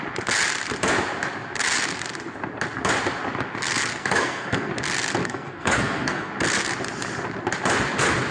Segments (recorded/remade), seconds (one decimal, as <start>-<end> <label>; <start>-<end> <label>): 0.0-3.9 recorded; 3.9-4.7 remade; 4.7-5.2 recorded; 5.2-6.3 remade; 6.3-8.3 recorded